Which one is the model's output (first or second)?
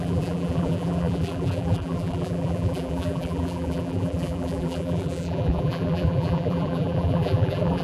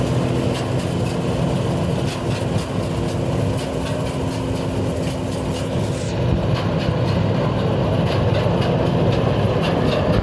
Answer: first